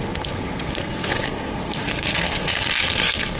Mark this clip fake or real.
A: fake